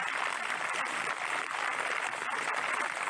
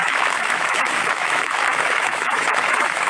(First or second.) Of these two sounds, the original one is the first